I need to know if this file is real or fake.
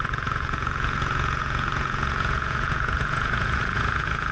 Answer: fake